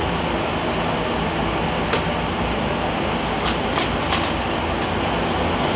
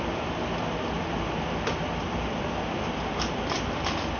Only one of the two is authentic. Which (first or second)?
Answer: first